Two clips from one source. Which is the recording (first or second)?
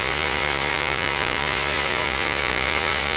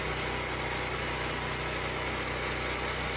second